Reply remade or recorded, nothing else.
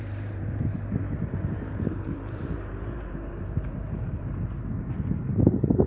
remade